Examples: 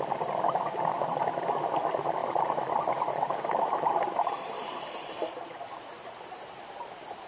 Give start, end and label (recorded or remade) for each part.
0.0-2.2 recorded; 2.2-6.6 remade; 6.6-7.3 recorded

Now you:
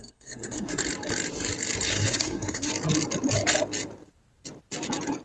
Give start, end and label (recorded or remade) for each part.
0.0-0.8 remade; 0.8-1.9 recorded; 1.9-2.7 remade; 2.7-5.2 recorded

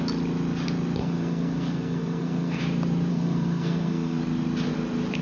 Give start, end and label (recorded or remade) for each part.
0.0-1.0 recorded; 1.0-2.6 remade; 2.6-3.1 recorded; 3.1-4.2 remade; 4.2-5.2 recorded

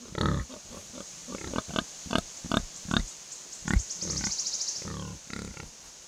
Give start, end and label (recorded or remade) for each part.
0.0-6.1 recorded

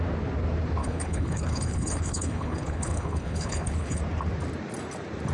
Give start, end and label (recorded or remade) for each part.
0.0-0.8 recorded; 0.8-4.0 remade; 4.0-5.3 recorded

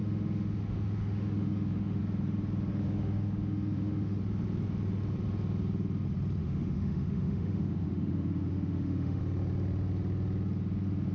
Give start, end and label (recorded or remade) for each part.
0.0-2.0 remade; 2.0-2.7 recorded; 2.7-4.2 remade; 4.2-6.4 recorded; 6.4-9.2 remade; 9.2-11.1 recorded

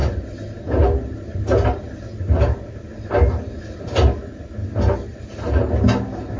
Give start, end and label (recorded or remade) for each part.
0.0-6.4 recorded